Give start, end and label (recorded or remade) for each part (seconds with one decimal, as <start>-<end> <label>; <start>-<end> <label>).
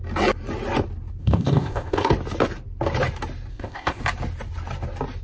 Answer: 0.0-1.2 recorded; 1.2-2.1 remade; 2.1-3.5 recorded; 3.5-4.0 remade; 4.0-5.2 recorded